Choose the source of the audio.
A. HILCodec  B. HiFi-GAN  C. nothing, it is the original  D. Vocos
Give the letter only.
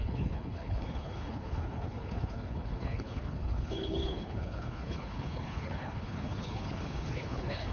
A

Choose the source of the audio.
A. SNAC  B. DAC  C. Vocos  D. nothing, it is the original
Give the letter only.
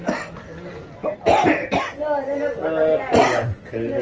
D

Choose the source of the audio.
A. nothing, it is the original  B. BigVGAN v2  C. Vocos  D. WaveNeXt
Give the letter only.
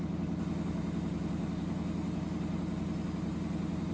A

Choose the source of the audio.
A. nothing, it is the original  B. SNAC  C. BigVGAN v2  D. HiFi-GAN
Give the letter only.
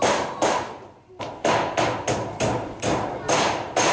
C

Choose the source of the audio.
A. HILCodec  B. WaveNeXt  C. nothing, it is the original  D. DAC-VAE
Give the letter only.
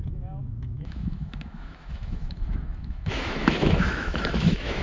D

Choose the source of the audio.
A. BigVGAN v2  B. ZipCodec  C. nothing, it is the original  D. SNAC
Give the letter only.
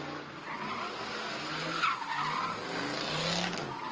C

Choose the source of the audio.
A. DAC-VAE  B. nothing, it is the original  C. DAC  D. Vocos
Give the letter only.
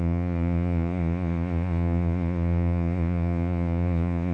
D